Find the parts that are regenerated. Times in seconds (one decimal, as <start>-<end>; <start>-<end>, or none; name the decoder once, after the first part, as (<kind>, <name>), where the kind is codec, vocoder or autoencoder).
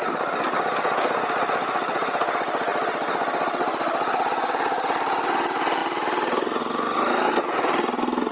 none